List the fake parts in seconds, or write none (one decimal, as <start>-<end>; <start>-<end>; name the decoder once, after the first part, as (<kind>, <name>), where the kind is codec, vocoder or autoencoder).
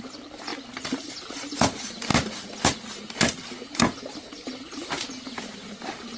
0.0-0.5 (vocoder, BigVGAN v2); 1.1-2.1; 5.8-6.2